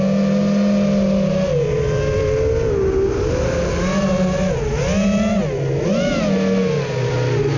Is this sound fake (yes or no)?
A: no